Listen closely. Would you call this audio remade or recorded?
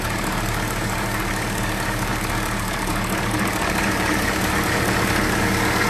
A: remade